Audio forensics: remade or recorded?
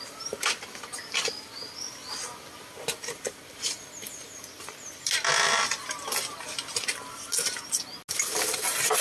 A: recorded